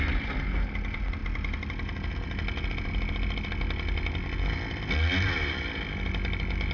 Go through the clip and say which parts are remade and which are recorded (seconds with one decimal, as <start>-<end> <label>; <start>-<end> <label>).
0.0-6.7 recorded